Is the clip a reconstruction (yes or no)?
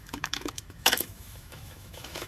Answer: yes